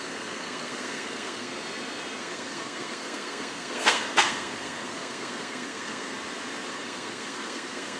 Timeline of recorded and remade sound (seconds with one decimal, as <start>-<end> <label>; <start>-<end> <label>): 0.0-1.5 remade; 1.5-2.2 recorded; 2.2-6.1 remade; 6.1-6.7 recorded; 6.7-8.0 remade